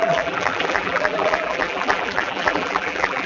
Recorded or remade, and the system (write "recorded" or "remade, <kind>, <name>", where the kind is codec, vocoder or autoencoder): remade, vocoder, BigVGAN v2